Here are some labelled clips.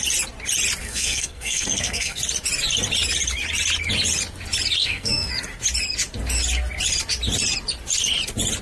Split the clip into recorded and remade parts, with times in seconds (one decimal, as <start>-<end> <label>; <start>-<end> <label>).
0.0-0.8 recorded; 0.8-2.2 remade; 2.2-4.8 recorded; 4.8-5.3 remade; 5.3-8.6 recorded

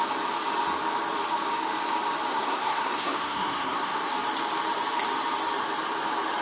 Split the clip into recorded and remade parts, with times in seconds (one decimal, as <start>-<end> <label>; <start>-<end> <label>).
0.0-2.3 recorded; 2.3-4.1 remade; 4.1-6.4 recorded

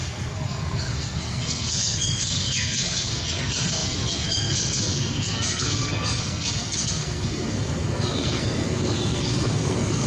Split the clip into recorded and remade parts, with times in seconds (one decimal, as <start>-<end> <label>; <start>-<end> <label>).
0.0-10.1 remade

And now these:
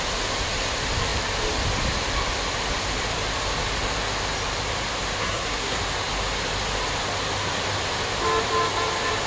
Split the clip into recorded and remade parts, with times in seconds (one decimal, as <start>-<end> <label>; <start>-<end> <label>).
0.0-5.2 recorded; 5.2-5.8 remade; 5.8-9.3 recorded

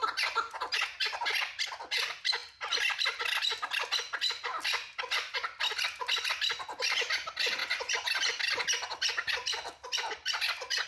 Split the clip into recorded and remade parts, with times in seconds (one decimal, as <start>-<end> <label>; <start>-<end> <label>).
0.0-10.9 recorded

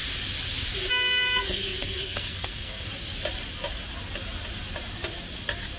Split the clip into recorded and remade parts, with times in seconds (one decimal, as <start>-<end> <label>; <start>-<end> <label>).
0.0-0.9 recorded; 0.9-2.9 remade; 2.9-5.8 recorded